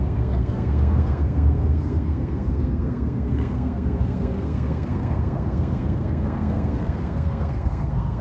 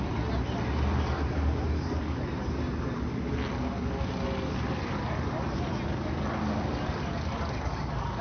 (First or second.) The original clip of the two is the second